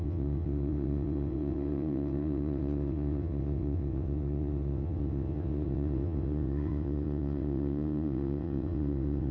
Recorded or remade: remade